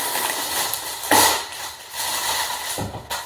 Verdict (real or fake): real